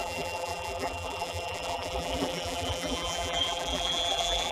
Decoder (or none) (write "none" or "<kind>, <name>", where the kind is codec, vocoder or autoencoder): vocoder, BigVGAN v2